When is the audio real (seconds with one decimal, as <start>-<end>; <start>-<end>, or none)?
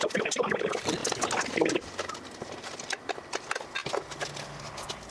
0.0-5.1